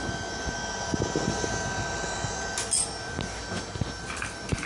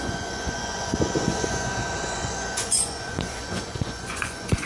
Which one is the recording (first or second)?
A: first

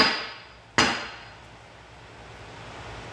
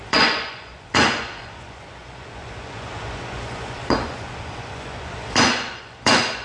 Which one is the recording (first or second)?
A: first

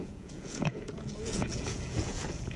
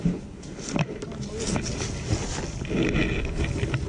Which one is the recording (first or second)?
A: second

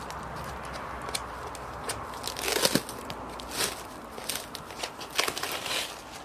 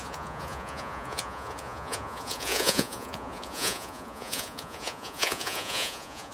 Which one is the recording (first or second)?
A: first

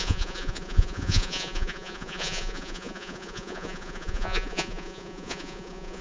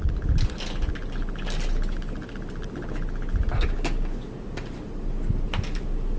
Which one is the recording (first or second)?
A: second